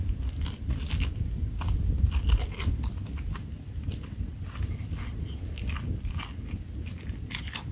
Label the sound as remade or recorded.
recorded